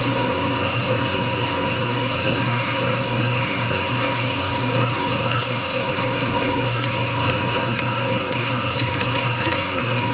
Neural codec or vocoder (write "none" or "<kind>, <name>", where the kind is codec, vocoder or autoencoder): codec, SNAC